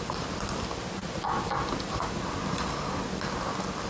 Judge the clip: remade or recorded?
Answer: recorded